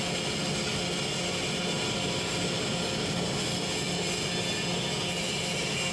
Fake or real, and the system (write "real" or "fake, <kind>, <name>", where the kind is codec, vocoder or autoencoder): real